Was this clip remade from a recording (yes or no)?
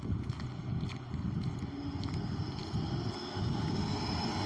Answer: no